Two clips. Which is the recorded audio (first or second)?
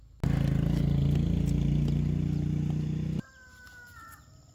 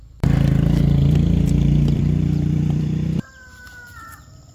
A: first